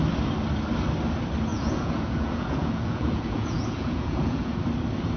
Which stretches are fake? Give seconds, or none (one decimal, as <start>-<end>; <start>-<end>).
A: 1.5-4.6